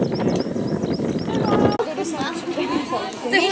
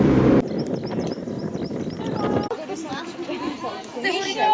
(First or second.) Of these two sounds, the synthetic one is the second